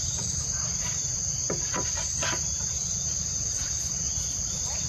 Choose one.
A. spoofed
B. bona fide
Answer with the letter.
B